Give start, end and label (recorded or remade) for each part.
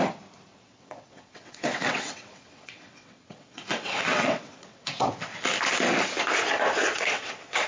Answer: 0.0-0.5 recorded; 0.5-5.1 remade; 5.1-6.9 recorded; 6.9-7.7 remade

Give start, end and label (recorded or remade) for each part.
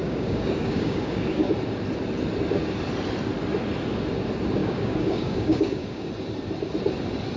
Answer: 0.0-1.5 remade; 1.5-4.6 recorded; 4.6-6.1 remade; 6.1-7.4 recorded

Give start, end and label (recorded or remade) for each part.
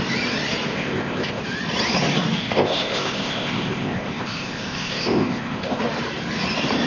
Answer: 0.0-0.7 recorded; 0.7-1.4 remade; 1.4-2.4 recorded; 2.4-5.8 remade; 5.8-6.9 recorded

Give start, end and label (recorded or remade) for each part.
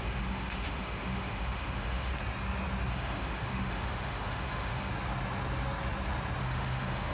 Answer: 0.0-2.1 remade; 2.1-2.9 recorded; 2.9-4.9 remade; 4.9-6.4 recorded; 6.4-7.1 remade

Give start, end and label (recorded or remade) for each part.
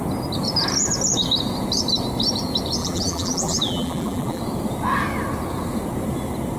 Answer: 0.0-2.8 recorded; 2.8-4.4 remade; 4.4-6.6 recorded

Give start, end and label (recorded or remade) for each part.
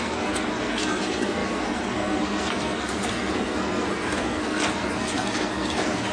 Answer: 0.0-6.1 remade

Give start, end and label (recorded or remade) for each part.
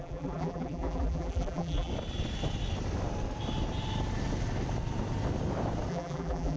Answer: 0.0-1.9 remade; 1.9-5.9 recorded; 5.9-6.6 remade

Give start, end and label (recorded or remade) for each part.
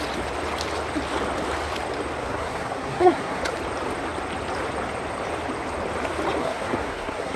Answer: 0.0-2.2 recorded; 2.2-3.4 remade; 3.4-6.4 recorded; 6.4-7.4 remade